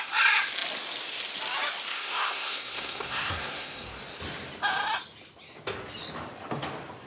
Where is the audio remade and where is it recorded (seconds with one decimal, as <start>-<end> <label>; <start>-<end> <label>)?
0.0-1.9 recorded; 1.9-4.0 remade; 4.0-7.1 recorded